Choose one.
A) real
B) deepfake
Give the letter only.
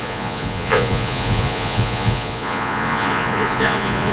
B